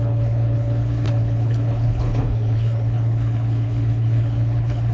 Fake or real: fake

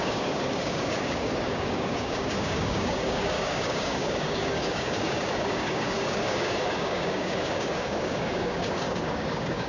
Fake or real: fake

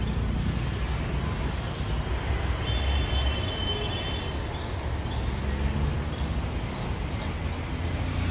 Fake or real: real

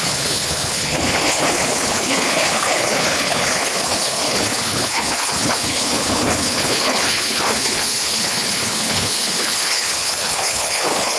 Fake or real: fake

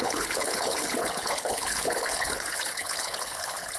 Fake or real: fake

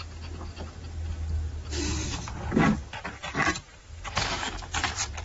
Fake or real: real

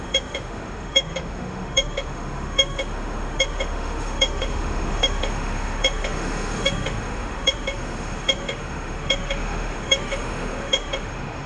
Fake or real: fake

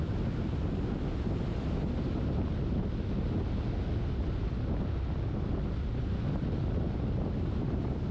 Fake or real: real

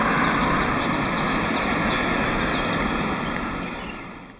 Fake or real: real